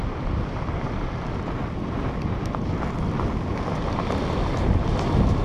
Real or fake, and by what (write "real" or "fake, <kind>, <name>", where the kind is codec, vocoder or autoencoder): real